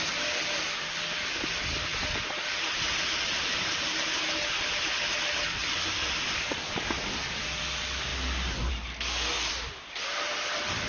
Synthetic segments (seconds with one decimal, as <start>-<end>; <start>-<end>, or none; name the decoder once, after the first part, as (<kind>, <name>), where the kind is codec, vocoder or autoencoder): none